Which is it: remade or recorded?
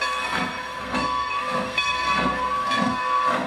remade